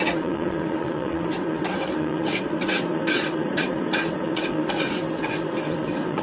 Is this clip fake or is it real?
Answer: fake